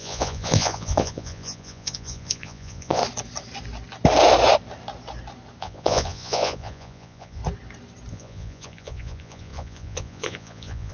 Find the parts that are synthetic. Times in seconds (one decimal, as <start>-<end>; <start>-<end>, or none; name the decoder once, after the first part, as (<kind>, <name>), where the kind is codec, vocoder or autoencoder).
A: 0.0-3.0 (vocoder, Vocos); 5.6-7.4; 8.1-10.9